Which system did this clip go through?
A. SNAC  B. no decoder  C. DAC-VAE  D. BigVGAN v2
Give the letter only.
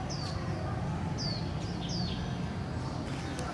B